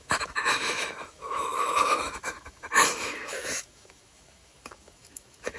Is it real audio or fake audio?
fake